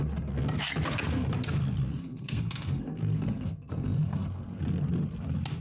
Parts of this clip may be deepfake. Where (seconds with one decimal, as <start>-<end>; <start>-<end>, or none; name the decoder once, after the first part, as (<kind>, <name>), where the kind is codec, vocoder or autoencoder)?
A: 1.9-4.6 (codec, SNAC)